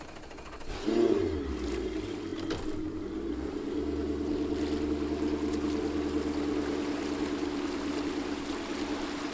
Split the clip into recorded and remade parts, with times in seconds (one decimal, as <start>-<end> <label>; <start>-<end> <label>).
0.0-9.3 recorded